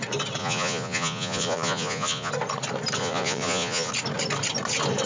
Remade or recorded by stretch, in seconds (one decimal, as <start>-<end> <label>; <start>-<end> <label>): 0.0-0.4 recorded; 0.4-2.3 remade; 2.3-3.0 recorded; 3.0-3.9 remade; 3.9-5.1 recorded